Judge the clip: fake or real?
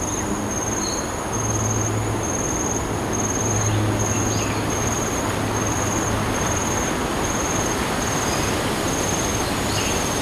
real